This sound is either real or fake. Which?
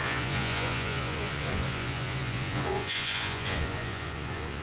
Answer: fake